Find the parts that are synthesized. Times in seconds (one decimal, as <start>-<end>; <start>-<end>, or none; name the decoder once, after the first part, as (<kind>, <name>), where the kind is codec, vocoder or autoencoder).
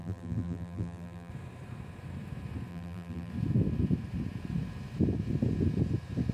0.0-1.3 (vocoder, BigVGAN v2); 2.7-3.3